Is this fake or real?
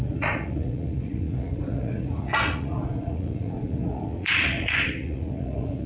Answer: fake